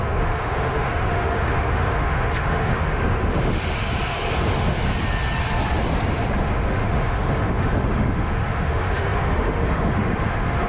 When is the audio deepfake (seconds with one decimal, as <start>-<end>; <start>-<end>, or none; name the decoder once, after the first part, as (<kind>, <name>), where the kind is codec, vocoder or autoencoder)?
0.0-3.8 (autoencoder, DAC-VAE); 4.3-4.9; 6.4-10.7